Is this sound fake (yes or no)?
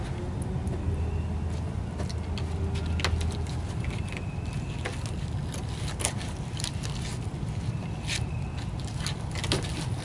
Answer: no